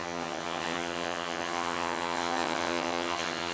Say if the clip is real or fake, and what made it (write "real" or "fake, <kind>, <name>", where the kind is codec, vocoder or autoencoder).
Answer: fake, vocoder, HiFi-GAN